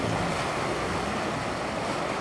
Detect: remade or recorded recorded